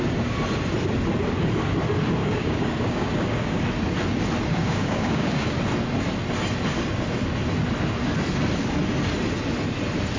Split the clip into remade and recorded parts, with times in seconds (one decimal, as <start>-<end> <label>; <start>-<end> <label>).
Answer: 0.0-2.2 recorded; 2.2-3.6 remade; 3.6-4.5 recorded; 4.5-5.6 remade; 5.6-10.2 recorded